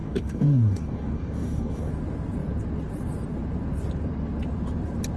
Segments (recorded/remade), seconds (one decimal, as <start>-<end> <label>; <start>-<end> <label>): 0.0-1.9 remade; 1.9-5.2 recorded